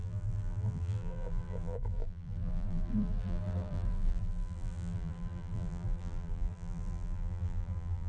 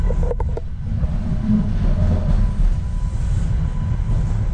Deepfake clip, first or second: first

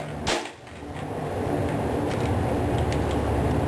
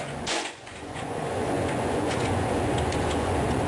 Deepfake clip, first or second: second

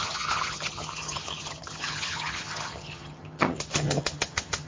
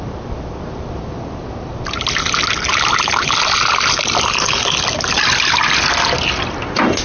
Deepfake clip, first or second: first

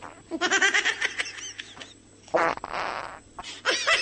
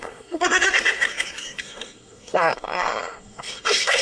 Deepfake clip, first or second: second